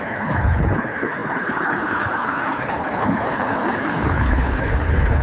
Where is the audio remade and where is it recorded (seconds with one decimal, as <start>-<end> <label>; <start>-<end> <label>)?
0.0-5.2 remade